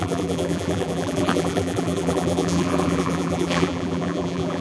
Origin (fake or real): fake